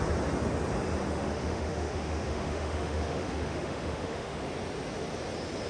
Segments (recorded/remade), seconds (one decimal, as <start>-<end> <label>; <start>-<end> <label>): 0.0-1.1 recorded; 1.1-4.4 remade; 4.4-5.7 recorded